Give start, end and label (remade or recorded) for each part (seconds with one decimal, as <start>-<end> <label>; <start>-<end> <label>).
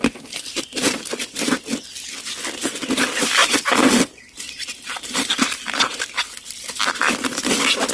0.0-7.9 remade